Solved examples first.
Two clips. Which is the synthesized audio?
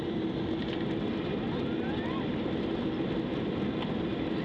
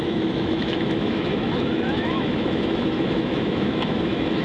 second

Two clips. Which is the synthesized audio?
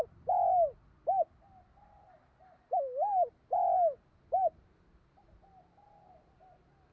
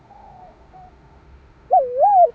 second